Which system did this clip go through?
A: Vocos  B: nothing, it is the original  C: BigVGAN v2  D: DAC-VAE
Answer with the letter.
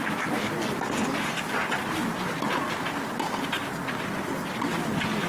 B